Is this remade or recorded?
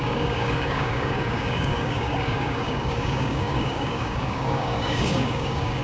remade